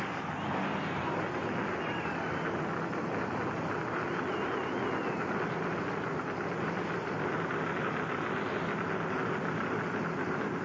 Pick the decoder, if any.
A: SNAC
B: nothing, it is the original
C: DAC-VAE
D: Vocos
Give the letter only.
B